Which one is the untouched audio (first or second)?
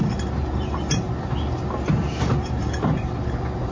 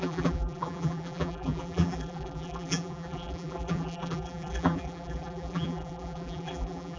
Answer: first